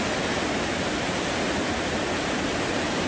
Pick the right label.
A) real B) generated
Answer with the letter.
A